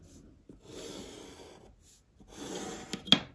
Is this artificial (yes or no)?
no